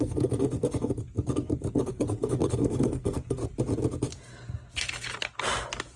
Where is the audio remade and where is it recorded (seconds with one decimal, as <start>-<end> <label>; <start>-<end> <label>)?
0.0-3.4 remade; 3.4-6.0 recorded